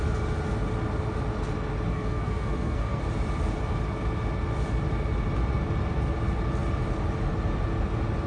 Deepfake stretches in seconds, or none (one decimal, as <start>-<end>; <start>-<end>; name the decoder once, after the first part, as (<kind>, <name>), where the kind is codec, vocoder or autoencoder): 1.9-3.0 (codec, SNAC)